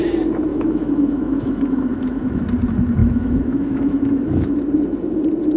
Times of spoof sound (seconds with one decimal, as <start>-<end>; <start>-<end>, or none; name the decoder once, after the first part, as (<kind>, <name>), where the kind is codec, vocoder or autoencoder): 0.5-2.4 (autoencoder, DAC-VAE); 3.0-4.5